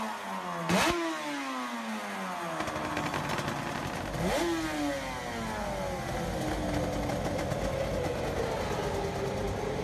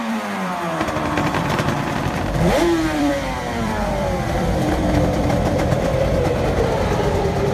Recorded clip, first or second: first